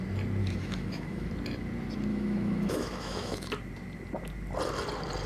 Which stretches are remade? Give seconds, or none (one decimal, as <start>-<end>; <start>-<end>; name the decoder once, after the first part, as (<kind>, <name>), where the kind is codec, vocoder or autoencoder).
0.4-1.3 (autoencoder, DAC-VAE); 2.1-3.5